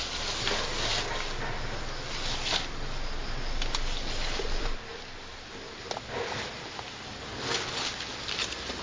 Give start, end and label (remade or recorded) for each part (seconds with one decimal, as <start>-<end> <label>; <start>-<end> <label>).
0.0-8.8 recorded

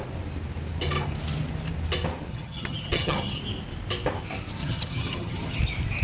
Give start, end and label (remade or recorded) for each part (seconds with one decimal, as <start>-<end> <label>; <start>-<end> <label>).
0.0-2.3 recorded; 2.3-3.4 remade; 3.4-4.6 recorded; 4.6-5.6 remade; 5.6-6.0 recorded